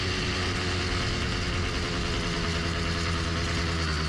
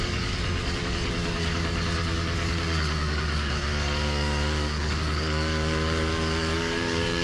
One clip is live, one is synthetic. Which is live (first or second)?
first